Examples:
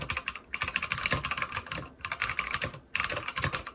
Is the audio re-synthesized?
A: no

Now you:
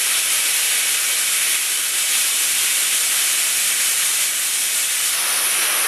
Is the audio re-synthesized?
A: no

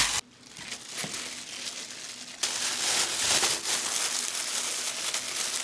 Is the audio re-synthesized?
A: no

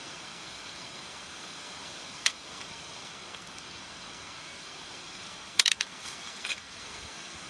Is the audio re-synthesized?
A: yes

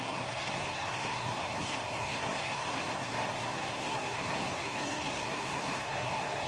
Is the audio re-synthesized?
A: yes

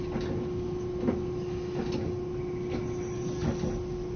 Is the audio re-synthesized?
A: no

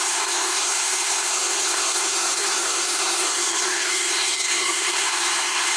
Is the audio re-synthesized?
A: yes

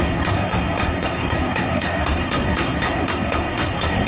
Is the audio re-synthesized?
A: yes